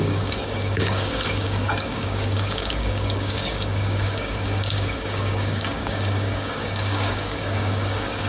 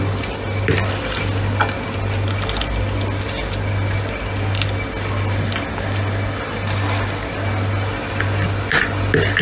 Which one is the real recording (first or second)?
second